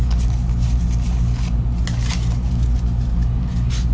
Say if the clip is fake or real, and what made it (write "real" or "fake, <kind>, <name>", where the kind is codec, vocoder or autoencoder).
real